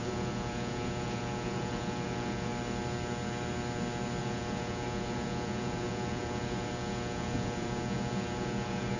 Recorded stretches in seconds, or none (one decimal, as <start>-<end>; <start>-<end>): 2.5-4.2